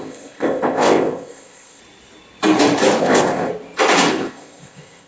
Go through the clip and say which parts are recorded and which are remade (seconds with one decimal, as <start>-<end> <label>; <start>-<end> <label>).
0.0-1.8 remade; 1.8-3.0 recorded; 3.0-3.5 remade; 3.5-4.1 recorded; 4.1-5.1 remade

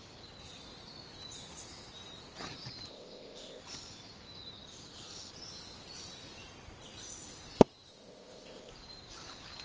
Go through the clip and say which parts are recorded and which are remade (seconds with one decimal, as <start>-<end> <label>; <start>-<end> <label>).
0.0-2.9 recorded; 2.9-3.6 remade; 3.6-7.9 recorded; 7.9-8.7 remade; 8.7-9.6 recorded

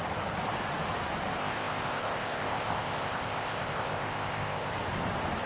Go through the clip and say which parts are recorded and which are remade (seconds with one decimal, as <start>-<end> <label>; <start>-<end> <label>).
0.0-1.4 recorded; 1.4-4.7 remade; 4.7-5.5 recorded

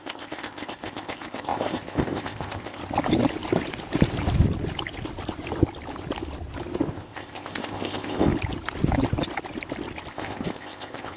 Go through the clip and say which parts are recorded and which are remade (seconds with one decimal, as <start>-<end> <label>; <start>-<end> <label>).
0.0-2.8 remade; 2.8-6.9 recorded; 6.9-8.3 remade; 8.3-10.1 recorded; 10.1-11.2 remade